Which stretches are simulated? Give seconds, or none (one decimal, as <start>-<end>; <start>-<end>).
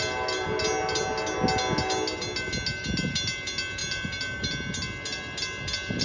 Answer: none